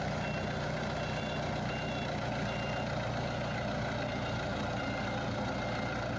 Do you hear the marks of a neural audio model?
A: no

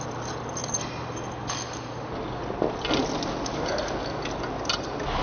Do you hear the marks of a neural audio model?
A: no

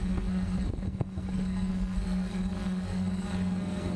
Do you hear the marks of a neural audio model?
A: yes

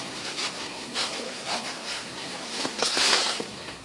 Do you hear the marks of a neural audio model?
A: yes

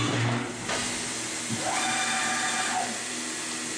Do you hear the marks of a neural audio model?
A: no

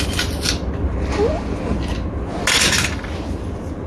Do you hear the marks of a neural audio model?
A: no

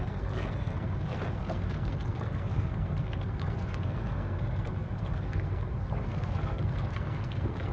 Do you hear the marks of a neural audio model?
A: yes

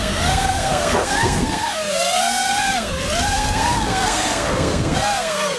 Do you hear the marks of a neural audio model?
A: yes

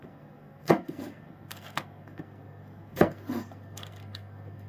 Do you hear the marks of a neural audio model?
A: yes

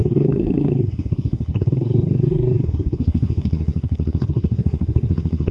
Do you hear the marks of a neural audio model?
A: yes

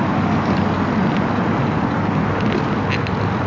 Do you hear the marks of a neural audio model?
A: no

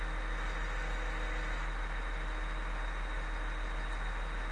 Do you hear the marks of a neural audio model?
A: no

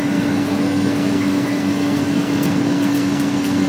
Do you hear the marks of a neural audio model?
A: yes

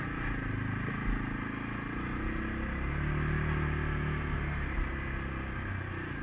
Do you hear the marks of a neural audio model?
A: no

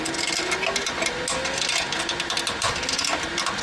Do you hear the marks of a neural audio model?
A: no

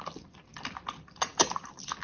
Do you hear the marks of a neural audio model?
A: no